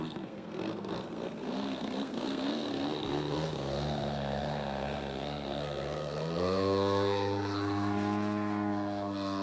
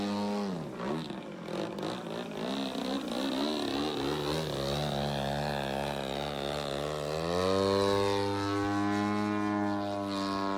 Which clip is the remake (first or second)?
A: first